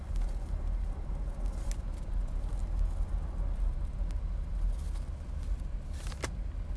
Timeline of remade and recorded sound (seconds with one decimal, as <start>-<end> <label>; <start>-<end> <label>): 0.0-6.8 recorded